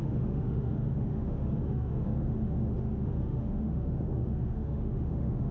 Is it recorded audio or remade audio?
remade